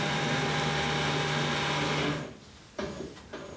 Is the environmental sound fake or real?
real